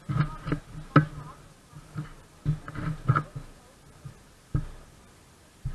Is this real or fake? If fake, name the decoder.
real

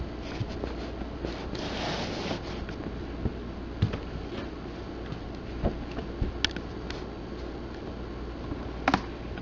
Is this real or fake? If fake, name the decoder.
real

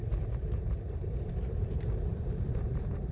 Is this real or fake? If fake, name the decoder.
fake, vocoder, BigVGAN v2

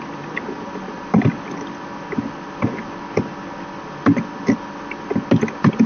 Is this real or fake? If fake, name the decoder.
real